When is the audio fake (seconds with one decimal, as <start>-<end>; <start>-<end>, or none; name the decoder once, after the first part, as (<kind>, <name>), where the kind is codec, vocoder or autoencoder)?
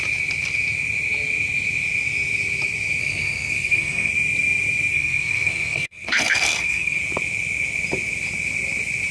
3.0-4.1 (codec, SNAC); 4.9-7.0